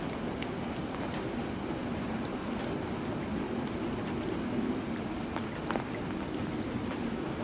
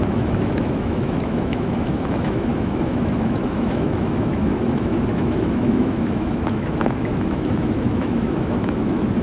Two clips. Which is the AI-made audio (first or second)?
second